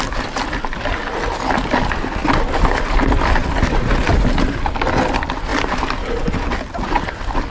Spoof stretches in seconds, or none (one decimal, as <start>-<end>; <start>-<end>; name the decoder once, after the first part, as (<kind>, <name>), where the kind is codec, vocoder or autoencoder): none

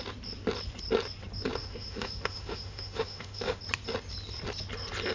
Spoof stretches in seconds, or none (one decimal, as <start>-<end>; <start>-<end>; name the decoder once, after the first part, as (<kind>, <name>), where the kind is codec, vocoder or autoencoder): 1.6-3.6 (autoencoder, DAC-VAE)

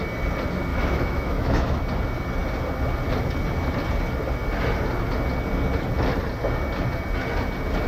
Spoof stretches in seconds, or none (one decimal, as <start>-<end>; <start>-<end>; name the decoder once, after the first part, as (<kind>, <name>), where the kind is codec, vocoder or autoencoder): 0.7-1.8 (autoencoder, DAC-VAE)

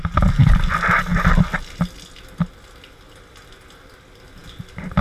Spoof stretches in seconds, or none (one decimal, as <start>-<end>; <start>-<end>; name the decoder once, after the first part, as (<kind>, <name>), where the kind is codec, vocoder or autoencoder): none